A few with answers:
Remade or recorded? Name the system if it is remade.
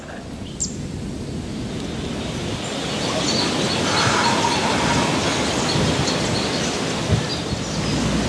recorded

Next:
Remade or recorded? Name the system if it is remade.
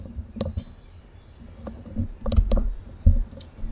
recorded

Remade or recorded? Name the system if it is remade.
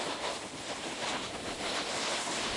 recorded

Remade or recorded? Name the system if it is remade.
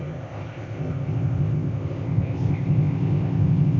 remade, codec, ZipCodec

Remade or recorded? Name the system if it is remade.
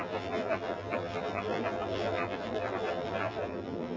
remade, vocoder, BigVGAN v2